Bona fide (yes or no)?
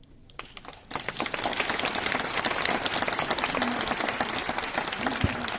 yes